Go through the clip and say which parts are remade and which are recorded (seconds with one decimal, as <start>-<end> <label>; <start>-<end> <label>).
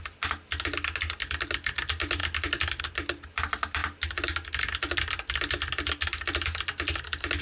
0.0-7.4 recorded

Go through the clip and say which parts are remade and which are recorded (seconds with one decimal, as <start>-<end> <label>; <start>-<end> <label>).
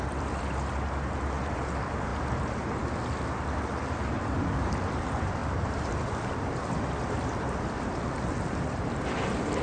0.0-2.1 remade; 2.1-3.6 recorded; 3.6-9.6 remade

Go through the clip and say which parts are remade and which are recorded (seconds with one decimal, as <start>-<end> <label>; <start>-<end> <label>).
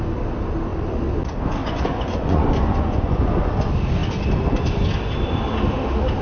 0.0-1.6 recorded; 1.6-3.3 remade; 3.3-6.2 recorded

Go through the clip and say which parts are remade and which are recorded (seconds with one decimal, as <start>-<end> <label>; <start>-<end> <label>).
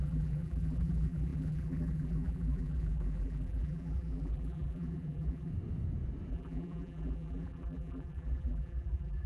0.0-5.5 remade; 5.5-6.3 recorded; 6.3-9.3 remade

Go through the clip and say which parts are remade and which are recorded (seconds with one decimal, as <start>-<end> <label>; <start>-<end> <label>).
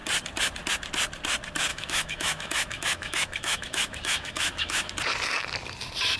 0.0-1.7 recorded; 1.7-4.9 remade; 4.9-6.2 recorded